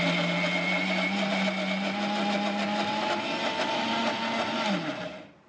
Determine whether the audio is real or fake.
real